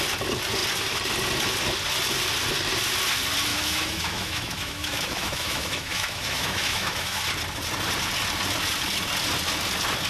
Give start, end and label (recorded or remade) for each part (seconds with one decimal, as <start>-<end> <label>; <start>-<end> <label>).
0.0-3.5 recorded; 3.5-7.2 remade; 7.2-10.1 recorded

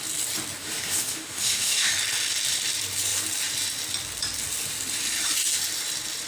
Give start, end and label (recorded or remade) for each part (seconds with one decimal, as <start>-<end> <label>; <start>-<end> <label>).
0.0-0.6 recorded; 0.6-1.9 remade; 1.9-6.3 recorded

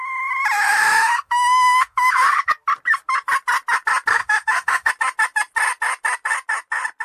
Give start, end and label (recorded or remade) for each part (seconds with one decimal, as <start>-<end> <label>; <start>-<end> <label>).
0.0-0.4 recorded; 0.4-2.5 remade; 2.5-4.1 recorded; 4.1-4.9 remade; 4.9-7.0 recorded

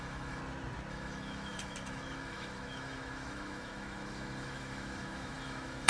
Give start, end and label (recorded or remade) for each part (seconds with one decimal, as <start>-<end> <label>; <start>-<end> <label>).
0.0-0.4 remade; 0.4-0.9 recorded; 0.9-5.9 remade

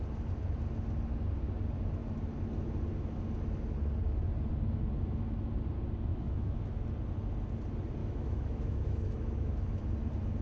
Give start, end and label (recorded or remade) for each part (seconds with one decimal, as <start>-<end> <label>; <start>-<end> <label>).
0.0-6.1 recorded; 6.1-6.6 remade; 6.6-8.0 recorded; 8.0-9.8 remade; 9.8-10.4 recorded

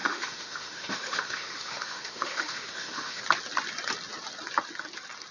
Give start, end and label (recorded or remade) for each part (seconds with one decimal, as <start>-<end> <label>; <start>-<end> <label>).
0.0-3.2 remade; 3.2-5.3 recorded

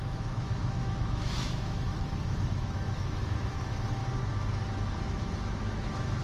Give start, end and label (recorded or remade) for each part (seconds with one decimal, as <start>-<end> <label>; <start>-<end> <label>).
0.0-4.0 remade; 4.0-4.9 recorded; 4.9-6.2 remade

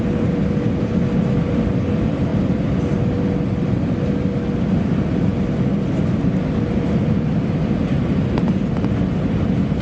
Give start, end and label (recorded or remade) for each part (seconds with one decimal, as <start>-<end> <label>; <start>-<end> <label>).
0.0-9.8 recorded